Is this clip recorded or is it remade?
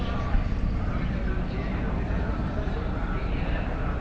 recorded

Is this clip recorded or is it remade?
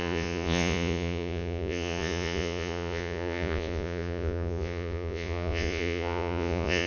remade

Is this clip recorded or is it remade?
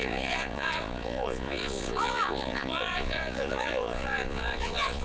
remade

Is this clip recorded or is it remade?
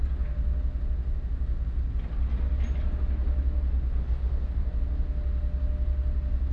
recorded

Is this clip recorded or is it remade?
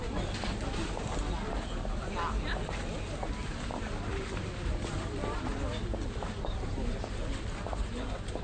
recorded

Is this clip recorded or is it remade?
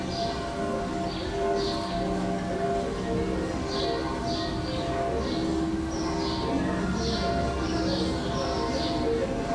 recorded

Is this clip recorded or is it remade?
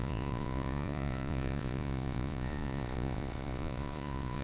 remade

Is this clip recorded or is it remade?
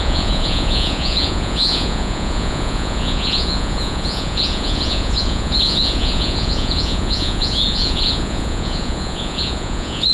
remade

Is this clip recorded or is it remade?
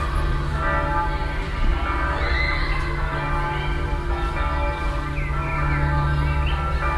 recorded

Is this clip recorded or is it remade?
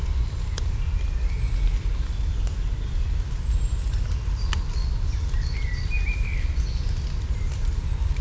recorded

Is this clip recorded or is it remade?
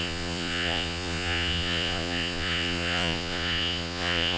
remade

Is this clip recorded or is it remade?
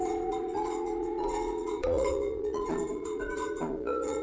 remade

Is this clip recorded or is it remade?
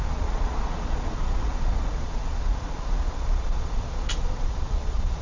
remade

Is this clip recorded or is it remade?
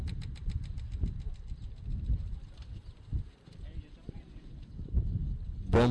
recorded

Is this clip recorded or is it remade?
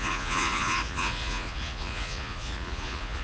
remade